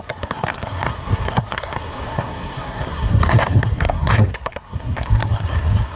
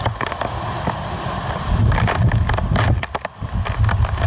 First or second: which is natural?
second